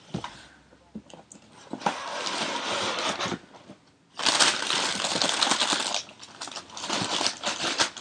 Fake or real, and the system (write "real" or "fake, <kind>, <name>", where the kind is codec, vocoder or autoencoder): real